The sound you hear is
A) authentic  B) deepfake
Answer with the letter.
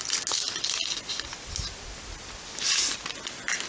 A